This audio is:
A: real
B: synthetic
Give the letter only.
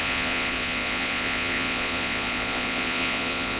B